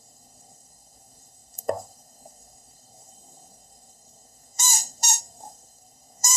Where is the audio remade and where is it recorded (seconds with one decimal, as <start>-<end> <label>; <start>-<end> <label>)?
0.0-6.4 remade